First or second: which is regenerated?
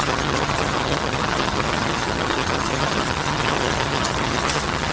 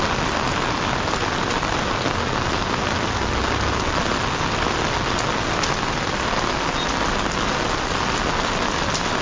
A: first